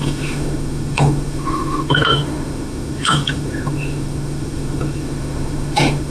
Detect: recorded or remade remade